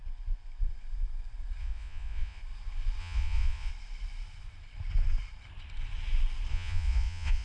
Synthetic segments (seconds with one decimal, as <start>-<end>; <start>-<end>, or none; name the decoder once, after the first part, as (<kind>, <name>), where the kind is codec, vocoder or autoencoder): 1.6-2.4 (vocoder, Vocos); 3.0-3.7; 6.5-7.4